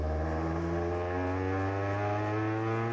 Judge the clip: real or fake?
real